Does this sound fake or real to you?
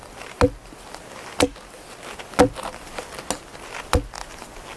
real